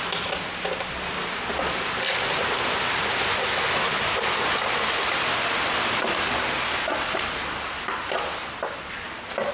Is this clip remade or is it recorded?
recorded